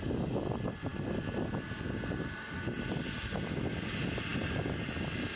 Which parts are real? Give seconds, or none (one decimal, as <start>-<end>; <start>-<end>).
0.0-5.4